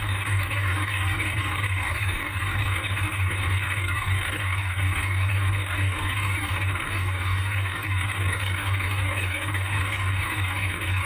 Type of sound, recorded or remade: remade